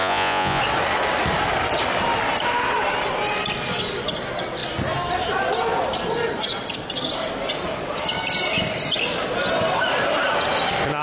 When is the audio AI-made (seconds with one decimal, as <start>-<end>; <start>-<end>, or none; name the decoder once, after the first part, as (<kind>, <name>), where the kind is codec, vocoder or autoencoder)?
0.0-0.6 (vocoder, Vocos)